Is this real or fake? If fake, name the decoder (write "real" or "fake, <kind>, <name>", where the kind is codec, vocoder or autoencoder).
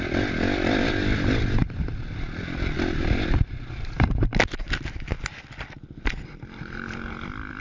real